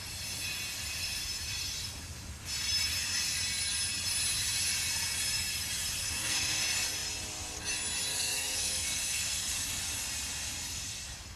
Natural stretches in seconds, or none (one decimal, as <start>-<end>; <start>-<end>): 0.0-6.0; 6.6-8.1; 9.5-11.4